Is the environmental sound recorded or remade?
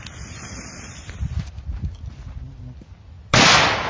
recorded